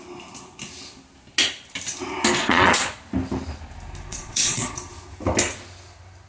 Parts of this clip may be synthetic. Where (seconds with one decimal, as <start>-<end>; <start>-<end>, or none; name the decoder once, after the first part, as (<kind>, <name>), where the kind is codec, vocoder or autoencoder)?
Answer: 2.4-3.0 (vocoder, Vocos); 4.1-4.7